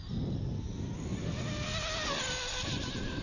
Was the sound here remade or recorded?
recorded